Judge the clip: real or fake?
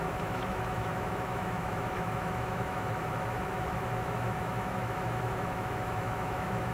fake